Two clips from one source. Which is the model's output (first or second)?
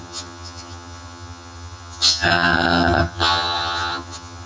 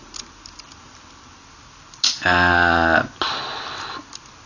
first